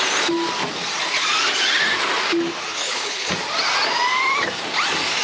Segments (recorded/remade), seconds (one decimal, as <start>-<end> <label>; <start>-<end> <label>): 0.0-2.7 recorded; 2.7-3.3 remade; 3.3-5.2 recorded